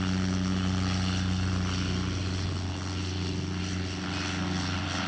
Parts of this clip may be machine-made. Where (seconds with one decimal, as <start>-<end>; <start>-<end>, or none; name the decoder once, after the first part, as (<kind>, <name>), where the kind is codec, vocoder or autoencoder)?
none